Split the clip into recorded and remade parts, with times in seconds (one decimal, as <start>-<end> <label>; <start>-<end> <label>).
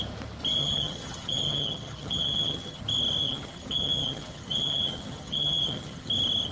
0.0-0.6 recorded; 0.6-2.8 remade; 2.8-3.2 recorded; 3.2-6.1 remade; 6.1-6.5 recorded